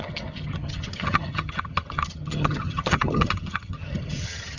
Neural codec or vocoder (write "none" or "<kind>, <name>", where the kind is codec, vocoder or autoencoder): vocoder, HiFi-GAN